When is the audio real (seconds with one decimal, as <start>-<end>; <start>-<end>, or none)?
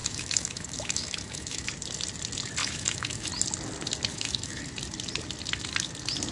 1.7-2.6; 3.3-4.1; 4.6-6.3